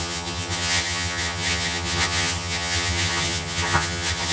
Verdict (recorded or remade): remade